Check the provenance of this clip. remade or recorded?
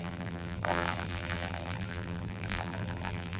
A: remade